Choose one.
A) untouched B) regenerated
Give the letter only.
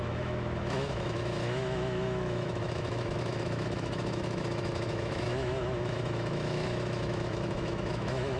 B